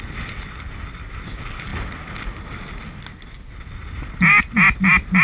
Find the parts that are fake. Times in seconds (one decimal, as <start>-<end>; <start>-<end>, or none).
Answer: none